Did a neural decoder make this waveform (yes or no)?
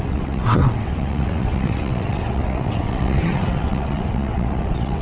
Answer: yes